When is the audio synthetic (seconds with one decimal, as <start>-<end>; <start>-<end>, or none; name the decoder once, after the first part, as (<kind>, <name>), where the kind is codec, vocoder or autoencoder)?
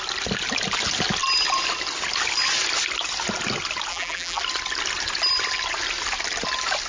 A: 3.9-4.4 (vocoder, BigVGAN v2)